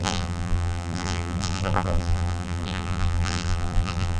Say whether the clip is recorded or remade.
remade